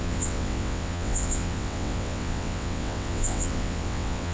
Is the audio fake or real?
fake